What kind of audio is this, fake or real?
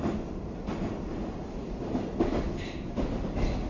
real